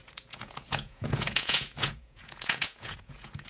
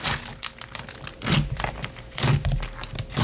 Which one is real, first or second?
second